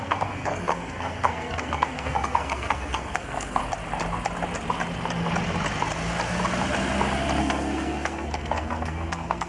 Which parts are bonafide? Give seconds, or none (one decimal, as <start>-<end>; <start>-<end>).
3.6-7.4